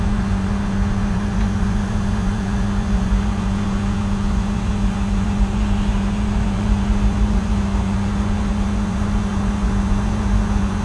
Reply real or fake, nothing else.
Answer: fake